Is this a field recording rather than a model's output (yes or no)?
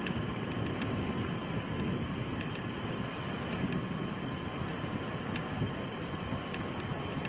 yes